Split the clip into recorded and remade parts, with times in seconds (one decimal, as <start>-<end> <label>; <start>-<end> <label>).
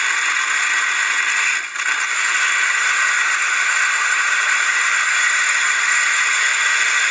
0.0-2.8 recorded; 2.8-6.4 remade; 6.4-7.1 recorded